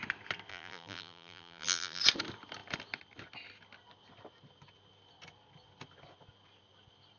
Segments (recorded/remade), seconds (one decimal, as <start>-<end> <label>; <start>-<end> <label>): 0.0-0.5 recorded; 0.5-2.0 remade; 2.0-7.2 recorded